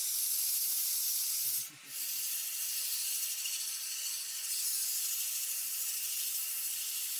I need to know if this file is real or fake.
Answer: real